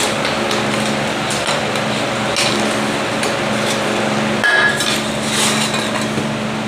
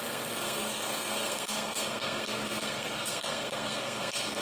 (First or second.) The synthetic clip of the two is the second